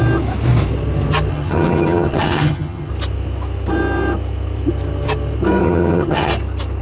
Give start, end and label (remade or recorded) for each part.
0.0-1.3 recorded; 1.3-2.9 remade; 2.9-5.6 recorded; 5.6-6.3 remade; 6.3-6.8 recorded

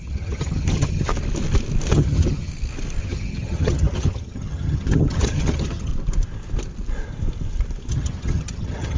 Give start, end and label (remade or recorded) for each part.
0.0-1.1 remade; 1.1-1.9 recorded; 1.9-2.5 remade; 2.5-3.0 recorded; 3.0-5.9 remade; 5.9-7.9 recorded; 7.9-9.0 remade

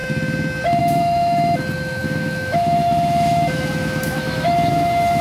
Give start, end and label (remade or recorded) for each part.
0.0-0.8 recorded; 0.8-5.2 remade

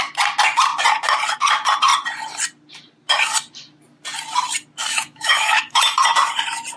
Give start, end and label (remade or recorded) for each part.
0.0-4.9 recorded; 4.9-5.8 remade; 5.8-6.8 recorded